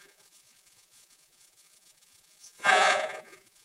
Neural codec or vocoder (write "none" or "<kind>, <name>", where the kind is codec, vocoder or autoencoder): vocoder, Vocos